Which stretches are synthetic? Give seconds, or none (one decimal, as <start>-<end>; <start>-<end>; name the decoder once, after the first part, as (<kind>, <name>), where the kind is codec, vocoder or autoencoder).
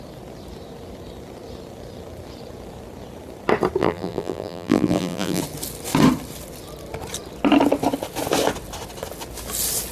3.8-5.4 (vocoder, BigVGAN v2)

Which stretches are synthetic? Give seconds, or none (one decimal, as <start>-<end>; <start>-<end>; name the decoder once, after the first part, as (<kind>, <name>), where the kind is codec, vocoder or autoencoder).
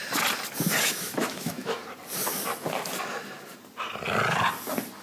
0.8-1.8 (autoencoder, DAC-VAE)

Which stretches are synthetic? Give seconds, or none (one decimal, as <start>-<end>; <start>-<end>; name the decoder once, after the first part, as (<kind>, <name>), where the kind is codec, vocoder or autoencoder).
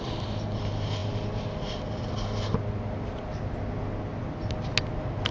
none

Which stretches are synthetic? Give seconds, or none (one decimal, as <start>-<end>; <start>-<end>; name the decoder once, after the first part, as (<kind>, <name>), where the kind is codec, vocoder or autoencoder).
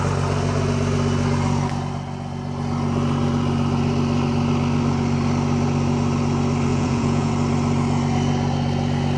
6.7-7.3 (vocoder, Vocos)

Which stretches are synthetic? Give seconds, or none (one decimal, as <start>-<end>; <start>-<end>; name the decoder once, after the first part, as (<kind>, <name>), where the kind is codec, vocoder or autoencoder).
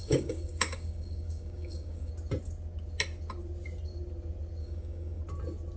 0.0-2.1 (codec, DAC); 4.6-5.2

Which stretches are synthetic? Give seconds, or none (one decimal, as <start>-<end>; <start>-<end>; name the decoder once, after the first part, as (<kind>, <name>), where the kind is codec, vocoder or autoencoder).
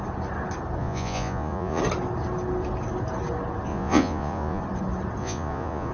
0.8-1.8 (vocoder, Vocos); 3.7-4.6; 5.2-5.9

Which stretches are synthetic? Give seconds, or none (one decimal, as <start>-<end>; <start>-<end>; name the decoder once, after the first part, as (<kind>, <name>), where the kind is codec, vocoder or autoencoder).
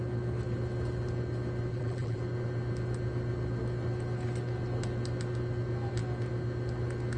1.7-2.2 (vocoder, BigVGAN v2)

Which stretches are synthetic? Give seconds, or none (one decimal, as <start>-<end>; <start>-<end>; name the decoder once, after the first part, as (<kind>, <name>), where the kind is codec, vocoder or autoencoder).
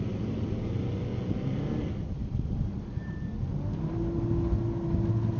none